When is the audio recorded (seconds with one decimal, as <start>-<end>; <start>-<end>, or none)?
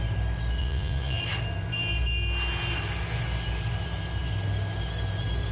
0.0-0.6; 1.2-5.5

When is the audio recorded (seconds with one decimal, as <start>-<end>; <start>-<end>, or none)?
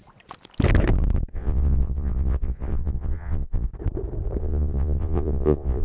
0.0-1.3; 3.7-4.4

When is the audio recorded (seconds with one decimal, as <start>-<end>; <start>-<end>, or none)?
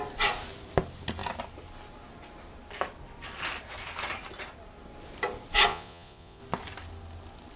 0.0-5.7; 6.4-7.6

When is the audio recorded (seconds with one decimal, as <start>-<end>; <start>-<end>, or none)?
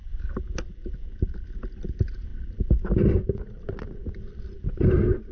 0.0-5.3